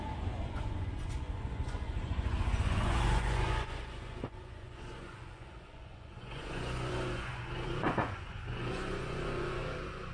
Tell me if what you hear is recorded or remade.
remade